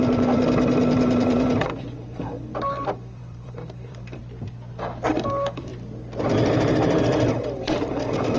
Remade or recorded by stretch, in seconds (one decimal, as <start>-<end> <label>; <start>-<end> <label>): 0.0-4.2 remade; 4.2-5.1 recorded; 5.1-5.7 remade; 5.7-7.0 recorded; 7.0-8.4 remade